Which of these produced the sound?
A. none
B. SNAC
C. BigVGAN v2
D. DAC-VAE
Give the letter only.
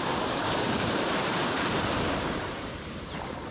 C